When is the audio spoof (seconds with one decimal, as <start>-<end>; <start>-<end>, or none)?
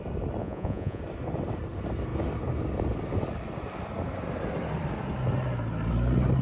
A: 0.4-1.0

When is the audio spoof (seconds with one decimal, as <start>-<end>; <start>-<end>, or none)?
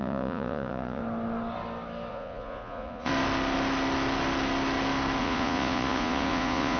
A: 0.0-1.0; 2.1-3.1; 5.2-6.8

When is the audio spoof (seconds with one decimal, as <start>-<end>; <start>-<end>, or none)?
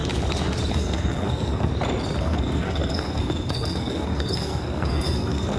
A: 0.7-1.7; 2.2-5.6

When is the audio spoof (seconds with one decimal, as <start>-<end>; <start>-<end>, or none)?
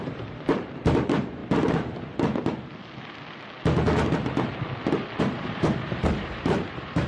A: 0.0-1.4; 5.2-7.1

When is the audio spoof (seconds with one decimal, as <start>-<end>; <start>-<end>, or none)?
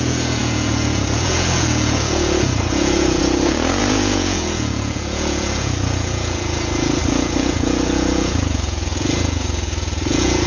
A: 0.0-10.5